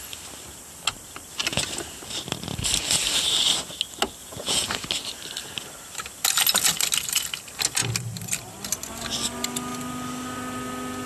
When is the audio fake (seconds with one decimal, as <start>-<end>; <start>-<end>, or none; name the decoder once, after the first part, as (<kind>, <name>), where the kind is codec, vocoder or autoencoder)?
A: 4.2-4.7 (vocoder, Vocos)